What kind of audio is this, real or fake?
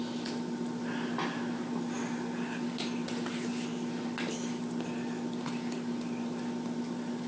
real